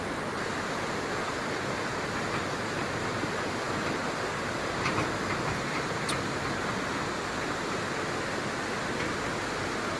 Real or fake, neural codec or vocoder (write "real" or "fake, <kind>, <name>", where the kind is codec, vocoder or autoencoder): real